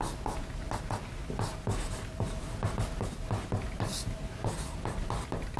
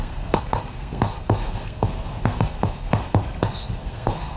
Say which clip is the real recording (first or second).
first